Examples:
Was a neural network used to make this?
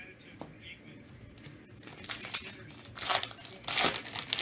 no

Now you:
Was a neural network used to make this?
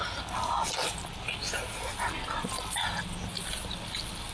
no